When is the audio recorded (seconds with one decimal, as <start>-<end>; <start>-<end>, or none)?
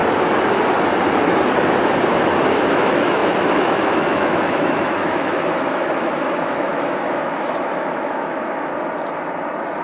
0.0-2.2; 8.7-9.8